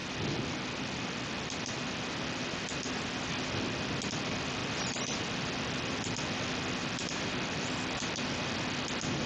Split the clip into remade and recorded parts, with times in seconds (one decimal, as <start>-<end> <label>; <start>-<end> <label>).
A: 0.0-9.3 recorded